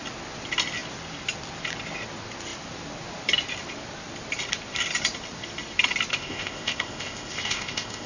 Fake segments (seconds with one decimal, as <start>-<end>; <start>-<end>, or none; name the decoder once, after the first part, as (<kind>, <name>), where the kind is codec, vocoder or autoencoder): 6.1-8.1 (codec, ZipCodec)